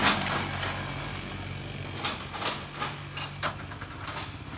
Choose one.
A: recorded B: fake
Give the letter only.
A